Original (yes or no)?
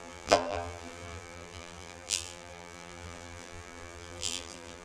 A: no